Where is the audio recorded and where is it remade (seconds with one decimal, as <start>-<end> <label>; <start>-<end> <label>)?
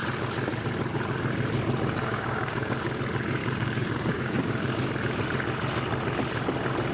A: 0.0-2.0 recorded; 2.0-3.0 remade; 3.0-3.4 recorded; 3.4-4.9 remade; 4.9-6.9 recorded